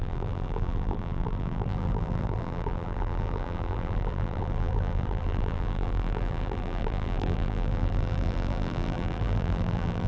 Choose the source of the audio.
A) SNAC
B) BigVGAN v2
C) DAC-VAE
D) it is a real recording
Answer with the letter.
B